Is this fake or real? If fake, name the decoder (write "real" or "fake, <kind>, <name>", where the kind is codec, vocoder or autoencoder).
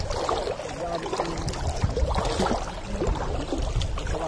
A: real